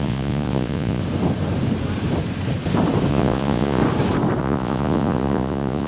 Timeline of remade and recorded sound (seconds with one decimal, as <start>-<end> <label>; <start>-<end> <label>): 0.0-1.0 remade; 1.0-3.1 recorded; 3.1-3.8 remade; 3.8-4.4 recorded; 4.4-5.9 remade